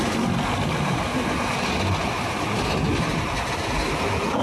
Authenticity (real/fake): real